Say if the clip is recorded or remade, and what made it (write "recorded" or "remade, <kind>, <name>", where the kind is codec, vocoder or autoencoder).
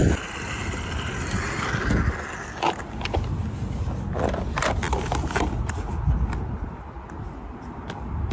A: recorded